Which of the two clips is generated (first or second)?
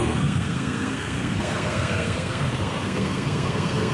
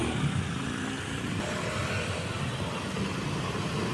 first